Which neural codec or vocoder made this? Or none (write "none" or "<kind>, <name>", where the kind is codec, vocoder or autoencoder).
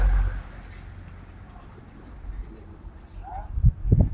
vocoder, BigVGAN v2